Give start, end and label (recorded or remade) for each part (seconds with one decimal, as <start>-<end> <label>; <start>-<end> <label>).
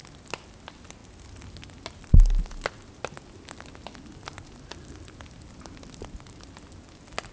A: 0.0-7.3 recorded